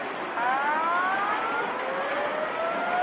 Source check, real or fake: real